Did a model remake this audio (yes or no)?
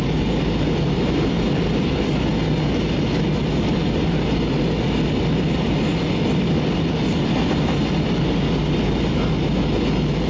no